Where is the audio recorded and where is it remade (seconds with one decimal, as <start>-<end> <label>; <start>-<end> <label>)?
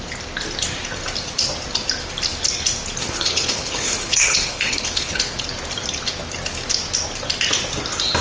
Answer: 0.0-3.0 recorded; 3.0-5.2 remade; 5.2-8.2 recorded